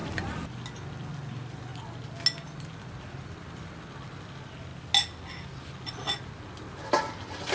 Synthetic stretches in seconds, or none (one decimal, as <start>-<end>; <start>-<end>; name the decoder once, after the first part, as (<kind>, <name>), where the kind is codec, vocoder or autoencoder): none